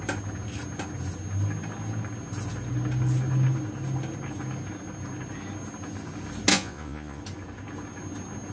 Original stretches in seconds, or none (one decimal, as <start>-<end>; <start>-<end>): 0.0-6.5; 7.2-8.5